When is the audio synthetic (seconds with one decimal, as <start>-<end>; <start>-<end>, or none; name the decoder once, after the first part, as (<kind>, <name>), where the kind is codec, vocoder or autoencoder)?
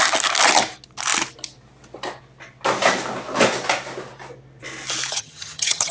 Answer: 5.1-5.9 (vocoder, HiFi-GAN)